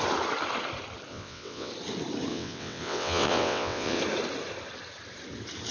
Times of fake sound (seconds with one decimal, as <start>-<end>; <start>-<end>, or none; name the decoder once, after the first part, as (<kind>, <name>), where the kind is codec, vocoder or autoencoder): 1.1-1.7 (vocoder, WaveNeXt); 2.3-4.0